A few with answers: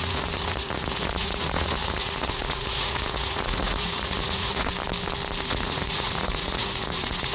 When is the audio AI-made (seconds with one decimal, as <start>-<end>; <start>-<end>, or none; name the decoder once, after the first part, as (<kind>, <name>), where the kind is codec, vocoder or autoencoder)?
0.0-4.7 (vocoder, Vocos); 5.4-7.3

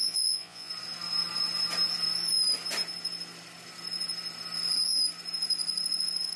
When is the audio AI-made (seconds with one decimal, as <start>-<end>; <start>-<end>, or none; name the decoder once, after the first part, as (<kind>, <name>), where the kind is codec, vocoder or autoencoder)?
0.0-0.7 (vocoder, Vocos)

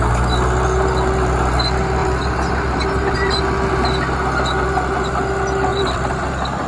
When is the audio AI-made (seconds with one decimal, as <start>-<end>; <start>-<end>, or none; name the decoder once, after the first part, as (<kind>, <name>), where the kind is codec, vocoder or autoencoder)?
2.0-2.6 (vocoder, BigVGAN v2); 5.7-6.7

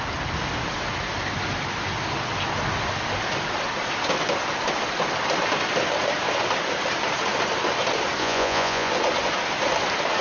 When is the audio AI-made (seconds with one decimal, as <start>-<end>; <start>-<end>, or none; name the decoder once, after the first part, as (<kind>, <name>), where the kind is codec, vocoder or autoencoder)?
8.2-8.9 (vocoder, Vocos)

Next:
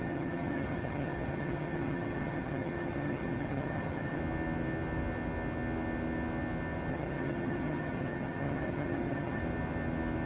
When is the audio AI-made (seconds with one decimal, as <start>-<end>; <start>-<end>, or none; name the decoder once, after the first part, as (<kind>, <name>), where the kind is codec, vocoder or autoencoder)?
0.0-4.2 (vocoder, HiFi-GAN); 6.9-9.4

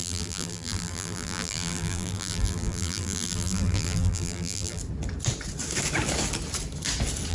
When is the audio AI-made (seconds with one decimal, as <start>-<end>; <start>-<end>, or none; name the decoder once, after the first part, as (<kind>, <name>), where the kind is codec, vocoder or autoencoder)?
0.0-4.8 (vocoder, BigVGAN v2)

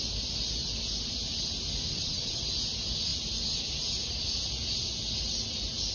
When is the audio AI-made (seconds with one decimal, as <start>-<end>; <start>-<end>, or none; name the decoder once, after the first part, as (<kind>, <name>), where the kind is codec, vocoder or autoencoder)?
1.9-2.4 (vocoder, HiFi-GAN)

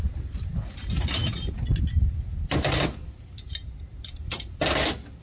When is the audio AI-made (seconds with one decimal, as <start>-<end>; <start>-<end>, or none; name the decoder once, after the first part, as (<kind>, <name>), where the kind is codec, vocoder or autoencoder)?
none